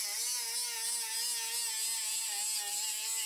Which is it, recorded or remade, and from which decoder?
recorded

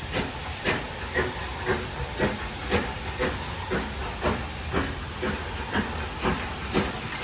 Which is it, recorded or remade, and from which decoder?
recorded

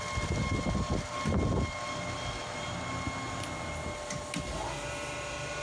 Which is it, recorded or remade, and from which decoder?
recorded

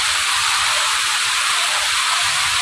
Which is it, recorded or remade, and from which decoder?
remade, vocoder, BigVGAN v2